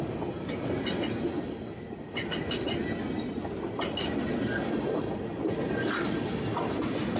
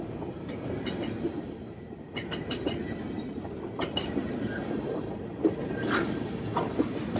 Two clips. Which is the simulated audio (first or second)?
second